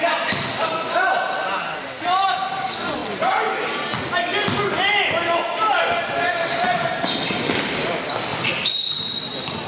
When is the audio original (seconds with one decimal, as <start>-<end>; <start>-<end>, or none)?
0.0-8.3; 9.0-9.7